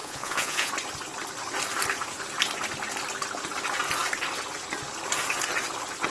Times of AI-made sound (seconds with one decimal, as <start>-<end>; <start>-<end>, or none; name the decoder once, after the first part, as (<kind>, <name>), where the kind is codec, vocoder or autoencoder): 0.0-0.7 (vocoder, Vocos)